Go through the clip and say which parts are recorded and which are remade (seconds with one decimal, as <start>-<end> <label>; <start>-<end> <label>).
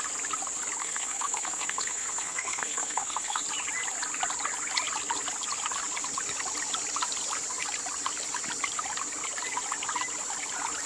0.0-0.8 recorded; 0.8-3.4 remade; 3.4-10.9 recorded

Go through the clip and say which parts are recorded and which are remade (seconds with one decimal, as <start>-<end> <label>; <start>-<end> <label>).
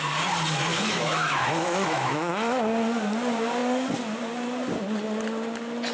0.0-0.7 recorded; 0.7-2.3 remade; 2.3-5.9 recorded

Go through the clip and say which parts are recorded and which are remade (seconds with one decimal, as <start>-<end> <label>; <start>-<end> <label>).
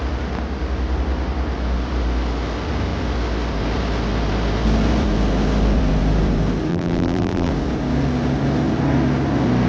0.0-6.7 recorded; 6.7-7.5 remade; 7.5-9.7 recorded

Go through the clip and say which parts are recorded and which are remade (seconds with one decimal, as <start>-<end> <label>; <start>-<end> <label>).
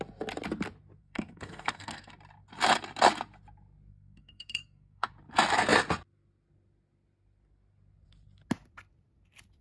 0.0-1.0 recorded; 1.0-2.1 remade; 2.1-3.9 recorded; 3.9-5.1 remade; 5.1-9.6 recorded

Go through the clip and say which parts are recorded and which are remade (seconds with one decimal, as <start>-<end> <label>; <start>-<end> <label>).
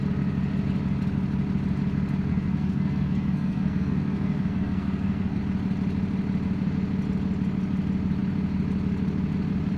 0.0-2.3 recorded; 2.3-5.4 remade; 5.4-9.8 recorded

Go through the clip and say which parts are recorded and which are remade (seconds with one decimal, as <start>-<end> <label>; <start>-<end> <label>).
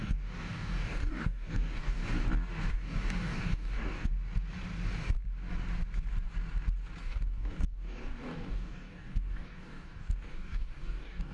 0.0-2.0 remade; 2.0-2.7 recorded; 2.7-4.1 remade; 4.1-7.0 recorded; 7.0-11.3 remade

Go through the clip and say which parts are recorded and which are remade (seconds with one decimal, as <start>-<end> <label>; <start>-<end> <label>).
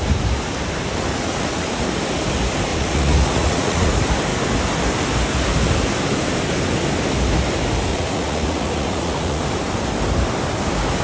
0.0-1.1 recorded; 1.1-1.8 remade; 1.8-2.7 recorded; 2.7-3.9 remade; 3.9-7.9 recorded; 7.9-9.4 remade; 9.4-11.0 recorded